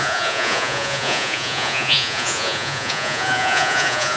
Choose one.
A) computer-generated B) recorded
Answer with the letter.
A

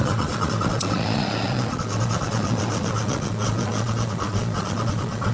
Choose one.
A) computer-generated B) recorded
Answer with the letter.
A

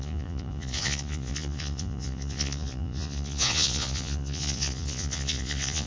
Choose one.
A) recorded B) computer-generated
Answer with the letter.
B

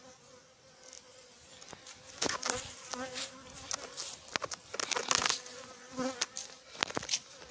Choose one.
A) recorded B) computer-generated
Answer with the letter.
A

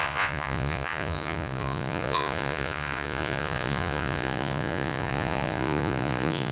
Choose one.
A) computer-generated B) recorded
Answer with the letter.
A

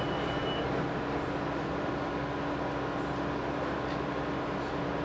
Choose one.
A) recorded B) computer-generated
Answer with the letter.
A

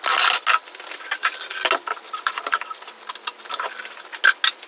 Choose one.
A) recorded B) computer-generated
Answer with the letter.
A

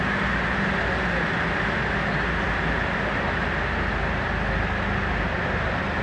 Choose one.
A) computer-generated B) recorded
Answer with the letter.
B